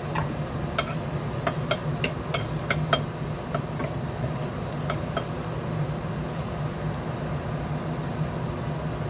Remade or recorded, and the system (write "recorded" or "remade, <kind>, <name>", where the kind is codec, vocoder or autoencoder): recorded